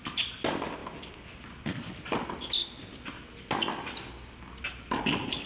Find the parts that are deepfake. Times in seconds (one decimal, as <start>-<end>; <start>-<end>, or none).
none